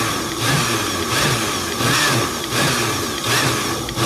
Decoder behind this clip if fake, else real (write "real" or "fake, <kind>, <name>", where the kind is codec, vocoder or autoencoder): real